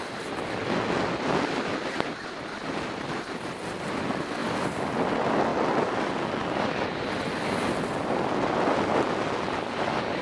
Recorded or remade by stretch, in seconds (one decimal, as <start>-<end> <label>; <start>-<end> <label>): 0.0-4.4 recorded; 4.4-4.9 remade; 4.9-10.2 recorded